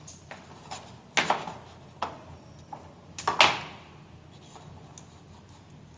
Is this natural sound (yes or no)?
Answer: yes